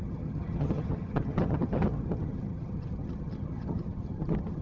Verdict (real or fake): fake